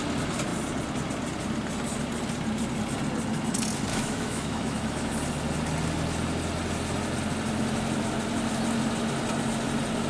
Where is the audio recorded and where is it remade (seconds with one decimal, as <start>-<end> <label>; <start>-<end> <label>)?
0.0-3.9 recorded; 3.9-5.1 remade; 5.1-10.1 recorded